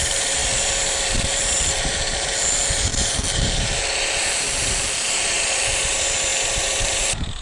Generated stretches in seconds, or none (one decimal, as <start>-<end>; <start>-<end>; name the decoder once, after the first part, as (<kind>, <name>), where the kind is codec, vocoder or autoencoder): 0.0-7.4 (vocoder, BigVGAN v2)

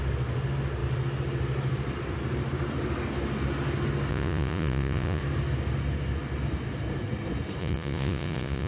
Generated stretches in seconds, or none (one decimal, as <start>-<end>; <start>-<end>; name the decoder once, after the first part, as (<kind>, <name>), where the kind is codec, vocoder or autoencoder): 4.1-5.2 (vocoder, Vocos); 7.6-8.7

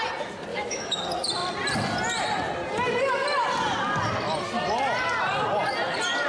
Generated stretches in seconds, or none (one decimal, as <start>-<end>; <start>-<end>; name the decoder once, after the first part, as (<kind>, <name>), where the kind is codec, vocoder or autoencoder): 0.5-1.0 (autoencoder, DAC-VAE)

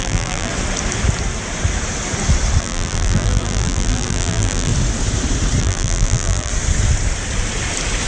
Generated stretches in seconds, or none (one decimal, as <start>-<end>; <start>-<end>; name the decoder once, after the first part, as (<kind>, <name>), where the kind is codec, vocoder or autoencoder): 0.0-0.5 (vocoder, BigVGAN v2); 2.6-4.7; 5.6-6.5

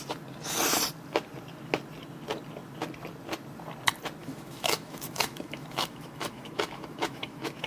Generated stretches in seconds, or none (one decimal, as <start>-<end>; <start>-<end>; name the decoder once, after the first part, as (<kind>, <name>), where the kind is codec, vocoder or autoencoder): 4.2-7.7 (autoencoder, DAC-VAE)

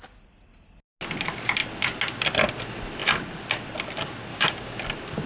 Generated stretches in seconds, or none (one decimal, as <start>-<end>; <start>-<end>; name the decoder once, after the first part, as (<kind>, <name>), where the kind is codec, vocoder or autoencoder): 4.3-4.8 (codec, DAC)

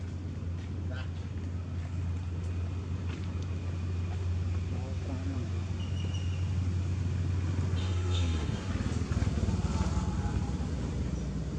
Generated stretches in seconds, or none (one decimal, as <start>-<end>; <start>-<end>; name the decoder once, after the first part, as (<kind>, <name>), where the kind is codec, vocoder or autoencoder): 7.8-8.7 (codec, SNAC)

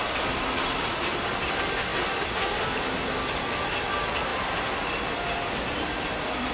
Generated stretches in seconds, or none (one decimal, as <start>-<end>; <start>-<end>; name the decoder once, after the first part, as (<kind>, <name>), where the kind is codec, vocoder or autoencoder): none